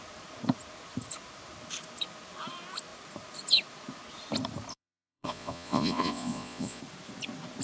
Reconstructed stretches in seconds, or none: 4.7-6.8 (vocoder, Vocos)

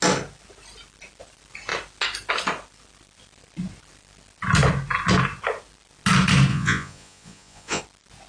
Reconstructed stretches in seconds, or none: 6.5-7.8 (vocoder, Vocos)

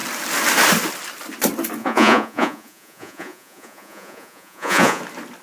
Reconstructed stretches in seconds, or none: 1.8-5.0 (vocoder, Vocos)